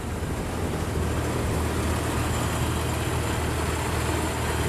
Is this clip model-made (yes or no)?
no